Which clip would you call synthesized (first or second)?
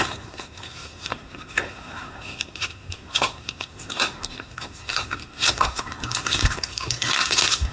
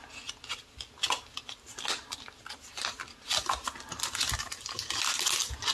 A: first